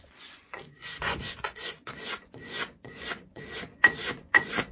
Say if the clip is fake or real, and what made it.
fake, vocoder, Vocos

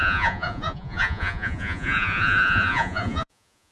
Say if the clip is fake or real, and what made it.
fake, vocoder, Vocos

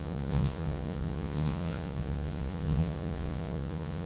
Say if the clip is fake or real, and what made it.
fake, vocoder, Vocos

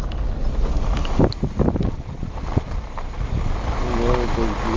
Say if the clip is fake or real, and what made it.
real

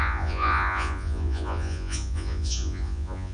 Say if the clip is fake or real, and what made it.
fake, vocoder, Vocos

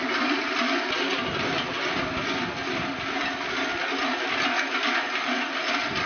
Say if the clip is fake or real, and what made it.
real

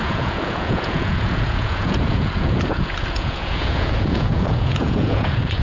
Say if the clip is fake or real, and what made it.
fake, vocoder, Vocos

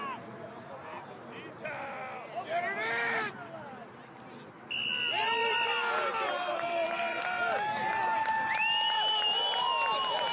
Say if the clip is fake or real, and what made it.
real